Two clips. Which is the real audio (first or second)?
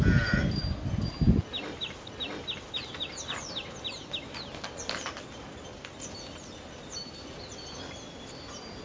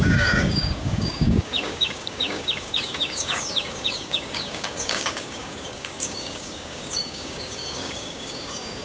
first